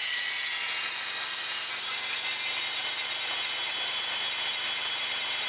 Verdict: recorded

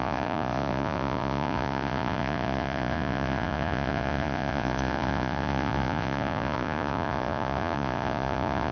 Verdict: remade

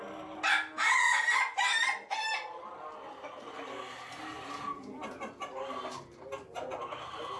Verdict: recorded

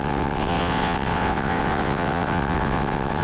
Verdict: remade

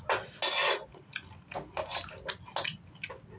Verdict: recorded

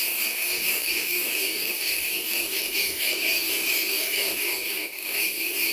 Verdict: remade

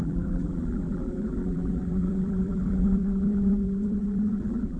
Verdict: remade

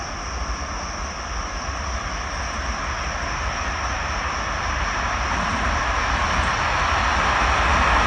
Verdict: recorded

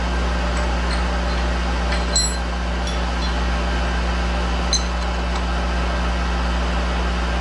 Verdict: recorded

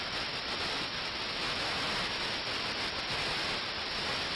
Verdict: recorded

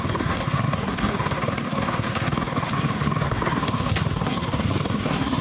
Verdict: remade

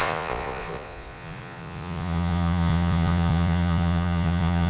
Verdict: remade